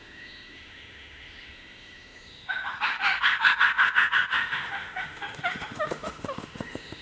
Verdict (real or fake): fake